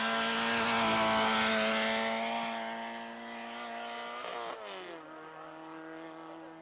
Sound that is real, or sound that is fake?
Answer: real